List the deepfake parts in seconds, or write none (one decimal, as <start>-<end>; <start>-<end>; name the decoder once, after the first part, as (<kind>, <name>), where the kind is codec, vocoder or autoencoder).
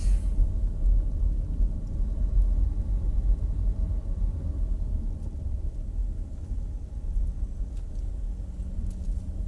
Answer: none